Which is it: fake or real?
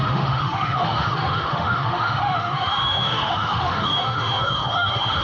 fake